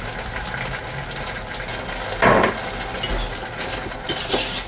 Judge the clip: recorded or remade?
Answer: recorded